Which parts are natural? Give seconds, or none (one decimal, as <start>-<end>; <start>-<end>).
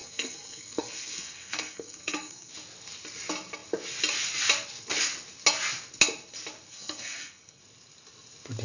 2.5-6.7; 7.6-8.6